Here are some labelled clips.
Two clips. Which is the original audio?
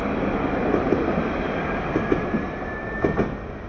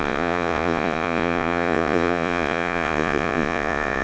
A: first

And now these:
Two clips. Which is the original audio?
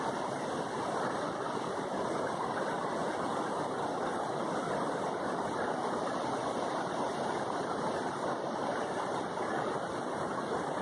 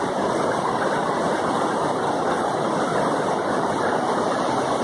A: second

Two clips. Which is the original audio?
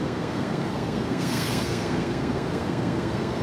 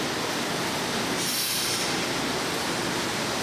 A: second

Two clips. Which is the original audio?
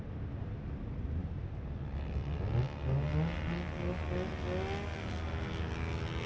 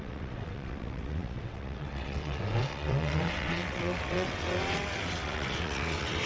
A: first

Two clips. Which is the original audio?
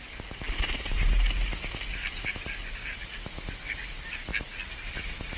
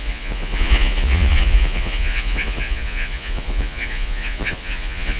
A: first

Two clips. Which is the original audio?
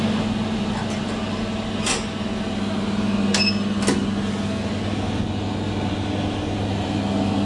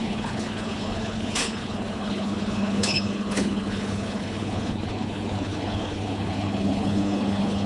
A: first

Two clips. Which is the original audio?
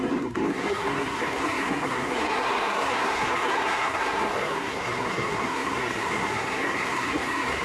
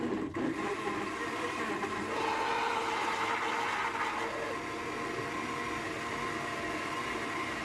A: second